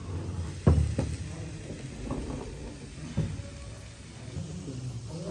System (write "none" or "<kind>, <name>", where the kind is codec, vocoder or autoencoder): none